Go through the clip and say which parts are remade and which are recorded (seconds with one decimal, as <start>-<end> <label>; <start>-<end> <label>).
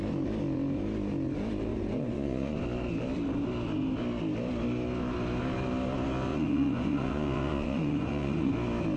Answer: 0.0-1.7 recorded; 1.7-2.6 remade; 2.6-6.3 recorded; 6.3-8.5 remade; 8.5-9.0 recorded